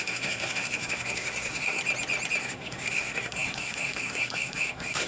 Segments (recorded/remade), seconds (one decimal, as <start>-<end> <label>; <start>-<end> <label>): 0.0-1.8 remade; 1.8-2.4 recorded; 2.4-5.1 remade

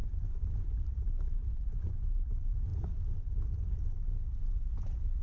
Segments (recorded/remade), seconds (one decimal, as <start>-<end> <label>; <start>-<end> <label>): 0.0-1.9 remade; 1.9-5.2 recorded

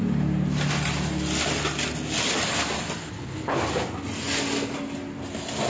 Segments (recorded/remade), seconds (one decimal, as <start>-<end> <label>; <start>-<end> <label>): 0.0-3.0 recorded; 3.0-3.6 remade; 3.6-5.7 recorded

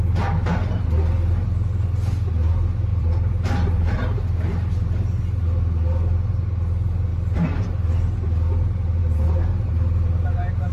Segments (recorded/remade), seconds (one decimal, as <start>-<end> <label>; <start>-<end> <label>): 0.0-2.9 recorded; 2.9-5.2 remade; 5.2-7.1 recorded; 7.1-7.6 remade; 7.6-10.7 recorded